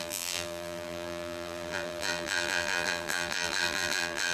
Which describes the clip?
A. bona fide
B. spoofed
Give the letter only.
B